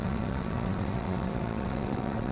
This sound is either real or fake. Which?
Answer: fake